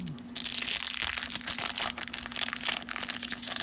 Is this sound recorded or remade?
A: recorded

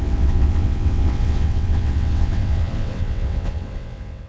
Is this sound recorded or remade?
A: remade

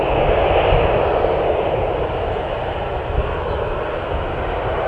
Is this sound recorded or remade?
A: recorded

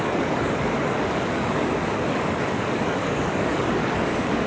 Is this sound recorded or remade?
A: remade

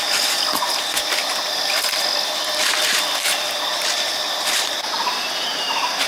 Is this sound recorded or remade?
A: recorded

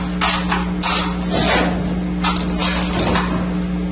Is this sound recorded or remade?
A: recorded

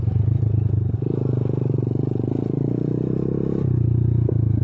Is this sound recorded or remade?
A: recorded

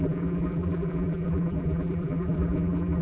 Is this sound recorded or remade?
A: remade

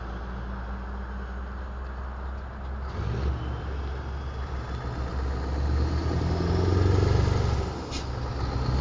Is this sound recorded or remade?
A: recorded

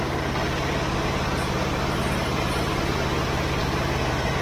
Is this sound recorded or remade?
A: recorded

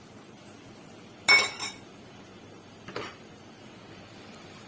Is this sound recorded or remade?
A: recorded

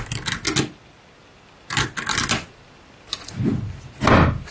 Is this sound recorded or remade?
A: recorded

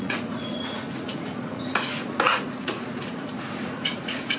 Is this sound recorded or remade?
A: remade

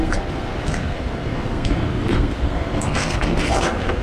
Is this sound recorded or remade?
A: remade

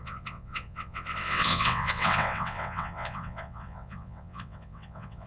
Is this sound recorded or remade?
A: remade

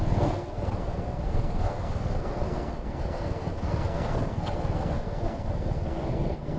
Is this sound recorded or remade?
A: remade